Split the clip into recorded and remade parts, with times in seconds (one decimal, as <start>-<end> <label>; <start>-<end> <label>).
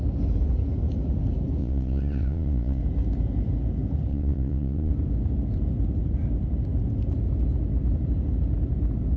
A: 0.0-1.6 recorded; 1.6-2.8 remade; 2.8-4.1 recorded; 4.1-4.9 remade; 4.9-9.2 recorded